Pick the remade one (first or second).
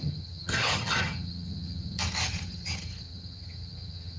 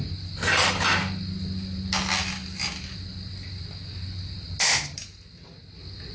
first